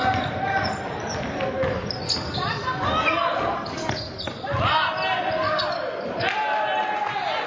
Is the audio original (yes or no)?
yes